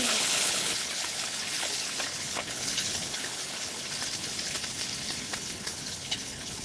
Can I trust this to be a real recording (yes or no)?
no